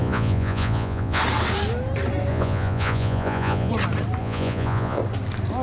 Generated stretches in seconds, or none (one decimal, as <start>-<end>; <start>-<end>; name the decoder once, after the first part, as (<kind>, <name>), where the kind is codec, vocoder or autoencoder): 0.0-1.2 (vocoder, Vocos); 2.3-3.7; 4.2-5.0